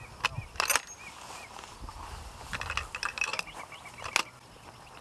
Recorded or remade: recorded